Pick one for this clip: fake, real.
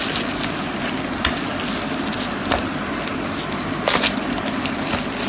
real